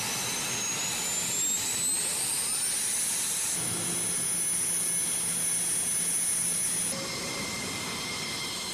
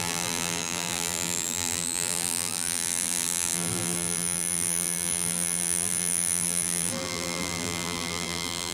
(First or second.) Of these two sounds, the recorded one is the first